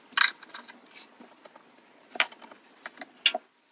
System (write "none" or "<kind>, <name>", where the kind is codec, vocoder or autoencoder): none